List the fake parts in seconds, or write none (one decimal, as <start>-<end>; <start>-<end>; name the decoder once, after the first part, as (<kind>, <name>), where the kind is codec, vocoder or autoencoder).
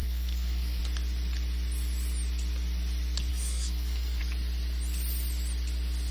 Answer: 0.0-0.8 (codec, SNAC); 3.3-4.2